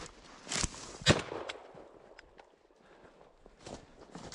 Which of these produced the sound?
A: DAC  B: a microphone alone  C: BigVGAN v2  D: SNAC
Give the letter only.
B